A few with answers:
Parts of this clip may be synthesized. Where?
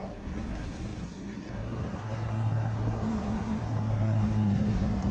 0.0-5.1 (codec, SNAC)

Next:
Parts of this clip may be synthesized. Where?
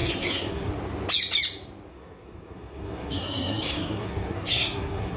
0.0-0.7 (codec, SNAC); 1.9-5.2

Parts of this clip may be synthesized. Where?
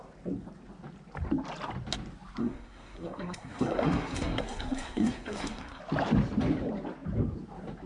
2.4-5.8 (codec, SNAC)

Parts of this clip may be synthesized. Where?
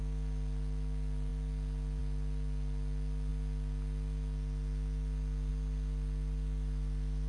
none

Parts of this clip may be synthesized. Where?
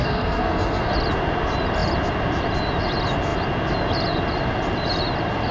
0.0-0.9 (codec, SNAC)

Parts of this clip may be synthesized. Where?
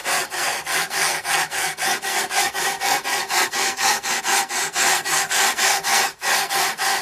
0.0-7.0 (codec, SNAC)